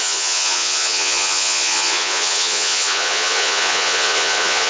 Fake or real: fake